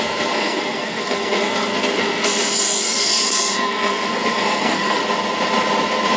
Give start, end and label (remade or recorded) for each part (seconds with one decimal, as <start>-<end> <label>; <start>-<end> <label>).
0.0-5.0 remade; 5.0-6.2 recorded